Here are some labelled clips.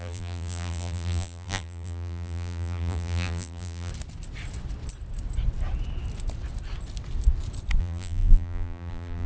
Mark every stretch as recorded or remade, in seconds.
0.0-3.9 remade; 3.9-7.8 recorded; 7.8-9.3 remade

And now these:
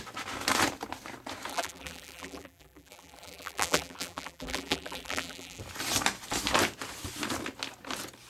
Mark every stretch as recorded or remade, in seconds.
0.0-1.5 recorded; 1.5-5.6 remade; 5.6-8.3 recorded

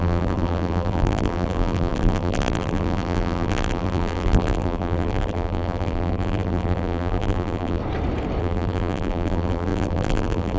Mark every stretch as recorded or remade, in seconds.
0.0-7.8 remade; 7.8-8.4 recorded; 8.4-10.6 remade

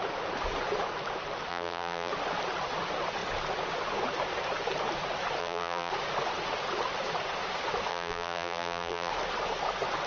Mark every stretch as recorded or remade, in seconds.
0.0-1.5 recorded; 1.5-2.1 remade; 2.1-5.4 recorded; 5.4-5.9 remade; 5.9-7.9 recorded; 7.9-9.1 remade; 9.1-10.1 recorded

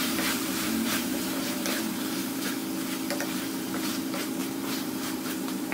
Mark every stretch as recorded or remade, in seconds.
0.0-2.6 remade; 2.6-3.2 recorded; 3.2-5.7 remade

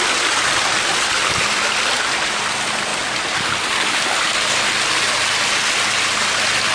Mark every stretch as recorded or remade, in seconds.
0.0-6.7 recorded